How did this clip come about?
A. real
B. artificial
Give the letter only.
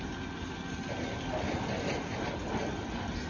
A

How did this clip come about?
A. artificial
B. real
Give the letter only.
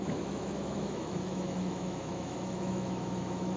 A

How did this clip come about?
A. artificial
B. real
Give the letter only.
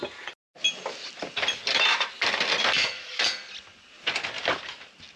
B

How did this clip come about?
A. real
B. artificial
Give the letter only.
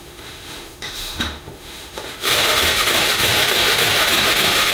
B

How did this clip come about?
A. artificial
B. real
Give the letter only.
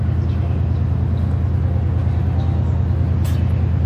B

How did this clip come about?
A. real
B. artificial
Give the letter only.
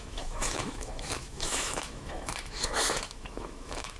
B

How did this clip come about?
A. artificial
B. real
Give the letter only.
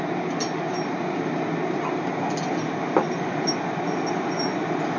B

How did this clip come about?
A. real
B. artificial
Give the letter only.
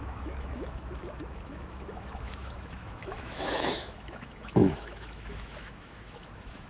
B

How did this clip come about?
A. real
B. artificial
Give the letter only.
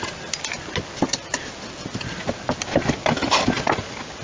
A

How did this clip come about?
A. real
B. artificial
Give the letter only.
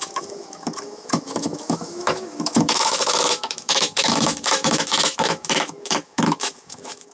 B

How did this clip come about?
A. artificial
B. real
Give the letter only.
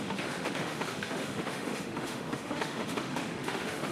A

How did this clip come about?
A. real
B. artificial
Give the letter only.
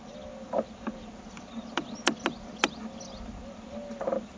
A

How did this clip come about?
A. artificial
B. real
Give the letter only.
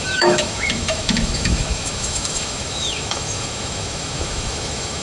A